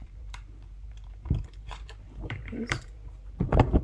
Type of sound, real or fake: fake